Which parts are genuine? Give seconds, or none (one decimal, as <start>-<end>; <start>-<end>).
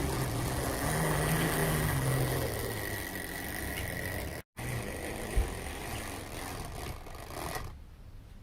0.0-4.5; 6.0-8.4